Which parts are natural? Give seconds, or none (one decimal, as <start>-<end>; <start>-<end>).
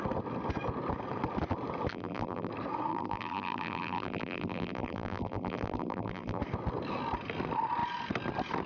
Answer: 0.0-1.9; 2.5-2.9; 6.4-8.7